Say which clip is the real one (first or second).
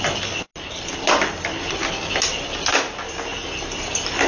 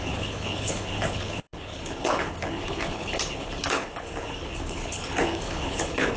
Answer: first